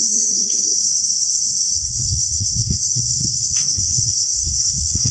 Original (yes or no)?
no